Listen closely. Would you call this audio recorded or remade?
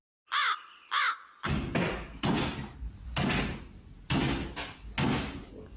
recorded